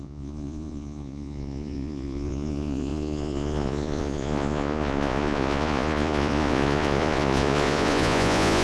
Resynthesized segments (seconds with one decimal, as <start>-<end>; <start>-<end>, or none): 0.0-8.6